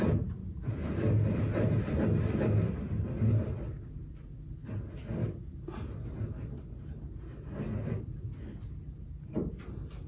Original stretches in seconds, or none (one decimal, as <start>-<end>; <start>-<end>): 0.0-10.1